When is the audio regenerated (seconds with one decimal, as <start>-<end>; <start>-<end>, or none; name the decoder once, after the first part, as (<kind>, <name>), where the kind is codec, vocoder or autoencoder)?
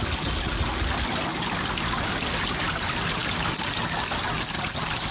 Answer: none